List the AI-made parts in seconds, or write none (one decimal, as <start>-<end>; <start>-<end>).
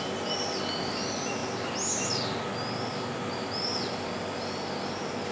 none